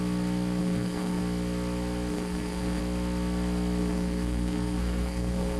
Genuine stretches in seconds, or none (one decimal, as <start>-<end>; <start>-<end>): 0.0-0.6; 1.2-2.1; 2.8-3.8